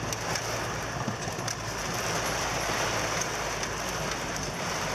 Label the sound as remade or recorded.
recorded